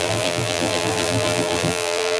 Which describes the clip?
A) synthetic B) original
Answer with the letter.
A